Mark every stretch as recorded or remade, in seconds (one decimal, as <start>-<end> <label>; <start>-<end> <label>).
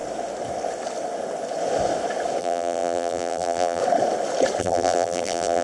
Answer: 0.0-2.4 recorded; 2.4-3.8 remade; 3.8-4.6 recorded; 4.6-5.6 remade